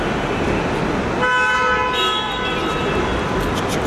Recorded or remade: recorded